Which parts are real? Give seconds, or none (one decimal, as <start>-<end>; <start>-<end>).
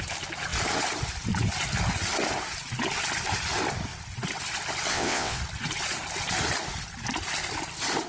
0.0-4.9; 5.4-8.1